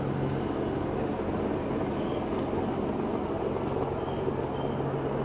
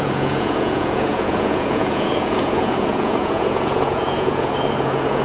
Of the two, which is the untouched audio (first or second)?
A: first